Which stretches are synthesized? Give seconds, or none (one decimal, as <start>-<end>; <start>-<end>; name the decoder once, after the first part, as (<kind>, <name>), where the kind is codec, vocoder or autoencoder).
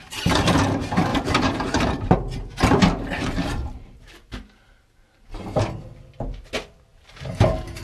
1.1-5.6 (vocoder, BigVGAN v2); 6.9-7.8